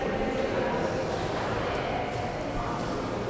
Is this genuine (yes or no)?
yes